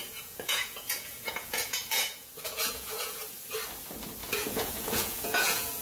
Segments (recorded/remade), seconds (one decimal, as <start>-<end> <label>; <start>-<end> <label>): 0.0-3.2 remade; 3.2-4.2 recorded; 4.2-5.8 remade